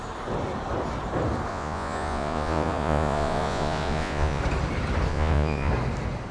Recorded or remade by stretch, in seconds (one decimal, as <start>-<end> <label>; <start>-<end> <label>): 0.0-1.5 recorded; 1.5-4.4 remade; 4.4-5.1 recorded; 5.1-5.7 remade; 5.7-6.3 recorded